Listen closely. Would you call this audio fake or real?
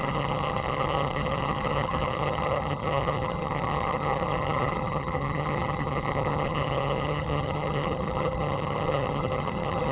fake